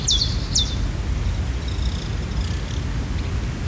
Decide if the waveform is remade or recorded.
recorded